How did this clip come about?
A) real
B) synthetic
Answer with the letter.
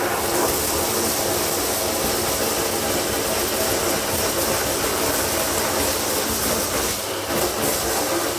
A